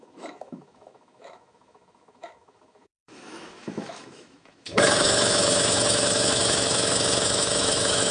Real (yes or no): no